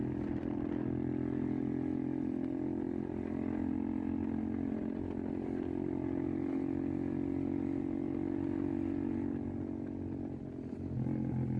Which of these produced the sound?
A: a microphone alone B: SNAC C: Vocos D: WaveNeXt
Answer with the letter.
A